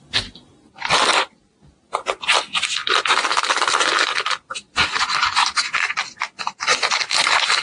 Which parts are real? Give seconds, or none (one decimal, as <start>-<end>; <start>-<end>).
0.0-7.6